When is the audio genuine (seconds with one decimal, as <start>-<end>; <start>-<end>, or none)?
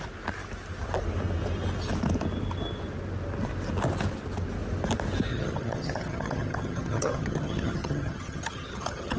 0.0-5.3